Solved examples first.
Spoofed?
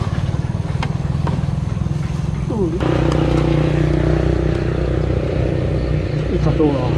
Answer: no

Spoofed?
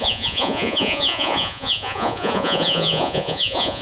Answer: yes